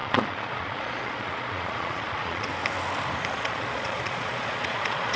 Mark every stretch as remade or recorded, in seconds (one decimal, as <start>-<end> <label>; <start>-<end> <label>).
0.0-2.5 remade; 2.5-3.3 recorded; 3.3-5.2 remade